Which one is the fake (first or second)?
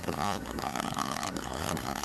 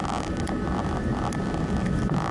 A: first